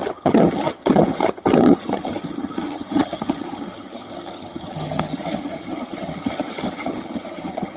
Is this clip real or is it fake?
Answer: fake